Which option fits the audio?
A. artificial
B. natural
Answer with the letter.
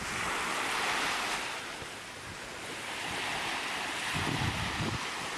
B